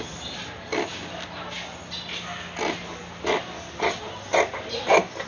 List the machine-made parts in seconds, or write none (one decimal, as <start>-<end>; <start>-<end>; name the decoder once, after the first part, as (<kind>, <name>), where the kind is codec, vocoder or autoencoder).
none